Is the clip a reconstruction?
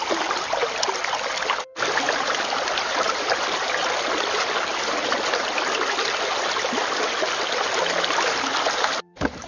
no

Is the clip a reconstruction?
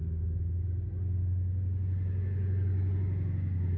no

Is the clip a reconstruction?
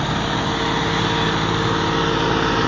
no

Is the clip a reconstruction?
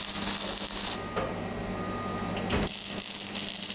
no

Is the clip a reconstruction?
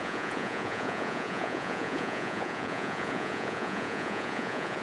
yes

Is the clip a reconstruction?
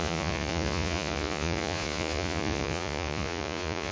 yes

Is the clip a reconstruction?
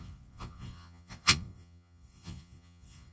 yes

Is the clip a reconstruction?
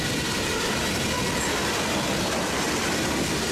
no